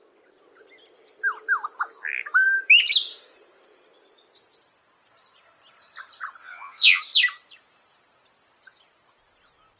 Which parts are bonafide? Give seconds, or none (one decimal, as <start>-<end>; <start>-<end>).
0.0-6.4; 7.0-9.8